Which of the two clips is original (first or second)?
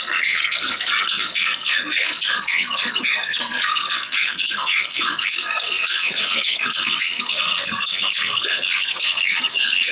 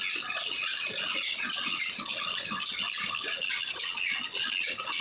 second